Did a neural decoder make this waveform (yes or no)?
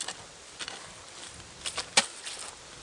no